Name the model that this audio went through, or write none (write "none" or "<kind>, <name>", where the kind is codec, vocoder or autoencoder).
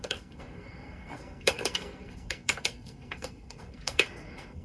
codec, SNAC